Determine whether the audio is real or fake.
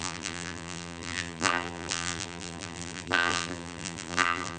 fake